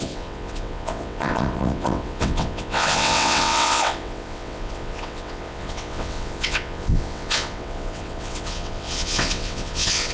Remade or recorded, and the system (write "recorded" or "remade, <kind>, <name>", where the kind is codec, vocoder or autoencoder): remade, vocoder, WaveNeXt